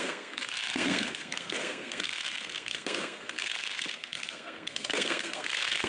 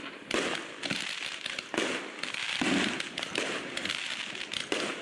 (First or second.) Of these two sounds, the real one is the second